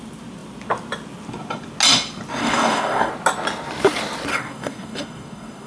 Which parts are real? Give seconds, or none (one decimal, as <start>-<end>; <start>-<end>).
0.0-2.4; 3.1-4.3